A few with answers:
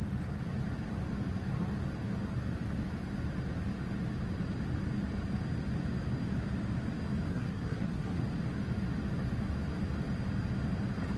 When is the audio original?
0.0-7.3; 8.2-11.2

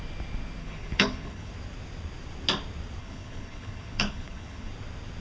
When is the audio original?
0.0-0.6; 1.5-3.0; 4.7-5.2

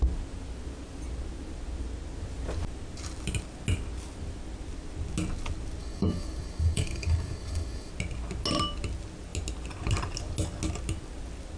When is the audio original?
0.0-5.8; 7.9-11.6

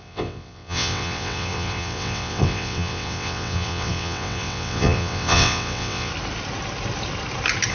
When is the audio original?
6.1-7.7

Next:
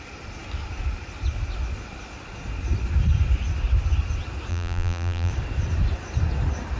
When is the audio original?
0.0-4.5; 5.3-6.8

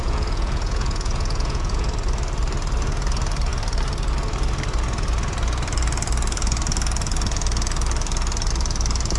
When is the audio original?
1.9-9.2

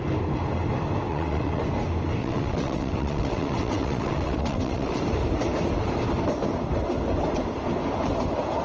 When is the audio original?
0.0-1.1; 1.6-2.2; 5.0-8.6